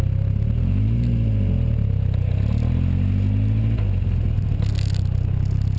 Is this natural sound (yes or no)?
yes